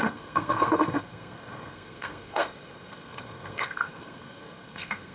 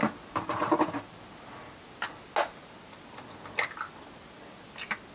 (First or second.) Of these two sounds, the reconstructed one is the first